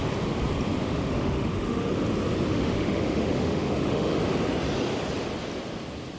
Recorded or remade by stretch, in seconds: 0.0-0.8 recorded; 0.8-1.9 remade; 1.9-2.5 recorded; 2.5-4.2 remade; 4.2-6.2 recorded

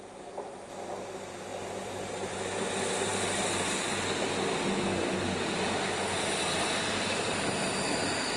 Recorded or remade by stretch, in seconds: 0.0-1.5 recorded; 1.5-2.3 remade; 2.3-8.4 recorded